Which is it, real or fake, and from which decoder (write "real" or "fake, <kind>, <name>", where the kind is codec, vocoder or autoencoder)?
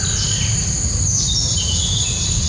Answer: real